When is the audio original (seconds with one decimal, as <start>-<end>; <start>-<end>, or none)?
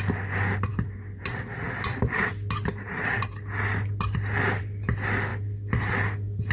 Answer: 0.0-6.5